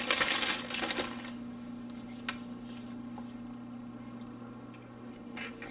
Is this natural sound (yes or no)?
yes